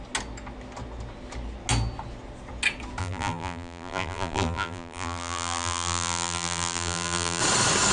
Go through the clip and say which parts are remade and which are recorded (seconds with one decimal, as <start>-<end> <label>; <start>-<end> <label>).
0.0-3.0 recorded; 3.0-7.4 remade; 7.4-7.9 recorded